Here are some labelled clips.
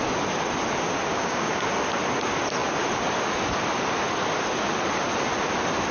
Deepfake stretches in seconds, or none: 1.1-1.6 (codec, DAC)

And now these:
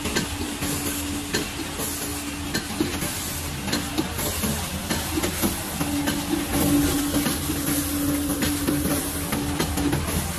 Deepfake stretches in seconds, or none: 8.3-9.0 (vocoder, BigVGAN v2)

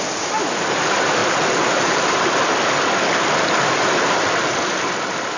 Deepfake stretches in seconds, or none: none